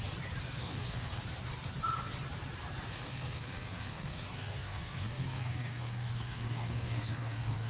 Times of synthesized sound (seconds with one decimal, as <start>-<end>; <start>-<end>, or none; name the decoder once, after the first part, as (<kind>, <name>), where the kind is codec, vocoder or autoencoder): 0.6-1.2 (codec, SNAC); 2.9-7.7